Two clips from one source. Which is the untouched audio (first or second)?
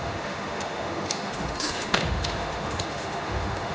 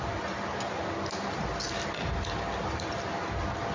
second